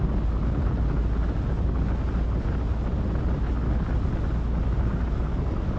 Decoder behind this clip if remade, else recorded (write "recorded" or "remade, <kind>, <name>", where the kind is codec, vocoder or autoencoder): recorded